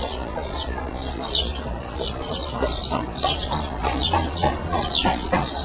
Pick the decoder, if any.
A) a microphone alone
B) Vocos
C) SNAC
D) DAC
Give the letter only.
B